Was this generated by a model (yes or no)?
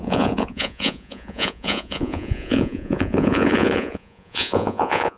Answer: yes